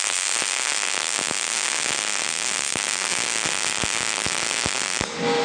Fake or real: real